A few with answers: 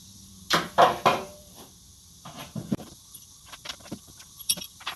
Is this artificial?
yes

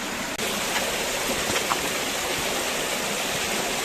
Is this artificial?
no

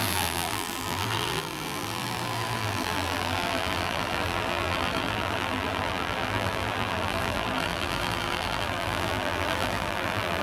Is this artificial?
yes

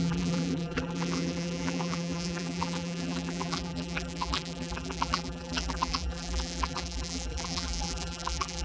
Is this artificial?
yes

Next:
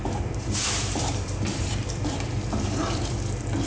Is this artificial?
yes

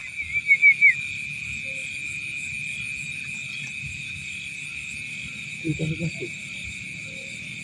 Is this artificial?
no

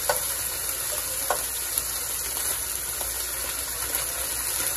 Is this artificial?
no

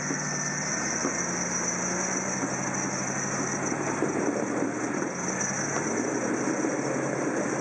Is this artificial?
no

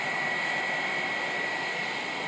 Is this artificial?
no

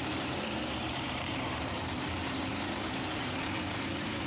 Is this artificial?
yes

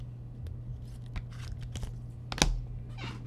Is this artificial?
no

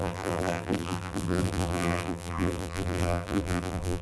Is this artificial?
yes